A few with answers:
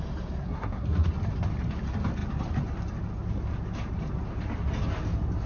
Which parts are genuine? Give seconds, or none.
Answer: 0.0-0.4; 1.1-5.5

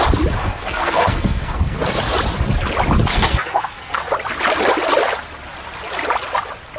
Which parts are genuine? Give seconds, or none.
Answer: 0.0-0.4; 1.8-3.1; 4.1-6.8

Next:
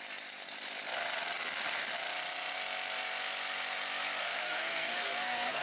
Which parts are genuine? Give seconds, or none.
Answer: 0.0-4.2